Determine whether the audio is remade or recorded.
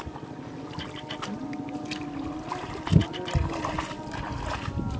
recorded